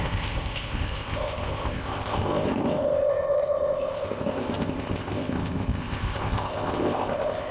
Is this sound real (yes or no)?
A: no